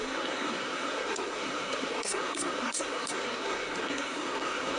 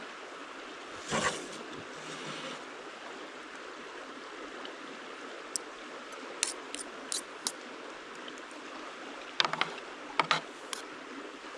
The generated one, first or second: first